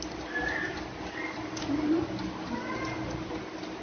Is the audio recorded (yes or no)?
yes